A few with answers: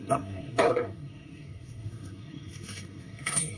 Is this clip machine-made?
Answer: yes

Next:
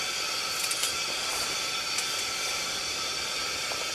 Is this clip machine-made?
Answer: no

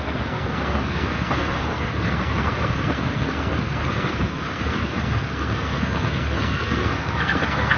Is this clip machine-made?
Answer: yes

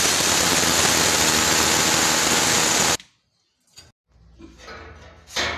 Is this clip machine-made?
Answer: no